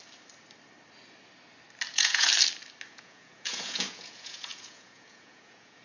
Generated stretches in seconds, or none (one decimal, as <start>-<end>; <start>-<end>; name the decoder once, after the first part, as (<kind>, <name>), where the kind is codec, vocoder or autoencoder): 1.9-2.3 (vocoder, Vocos); 2.9-5.8